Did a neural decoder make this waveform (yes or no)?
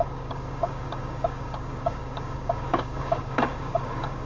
yes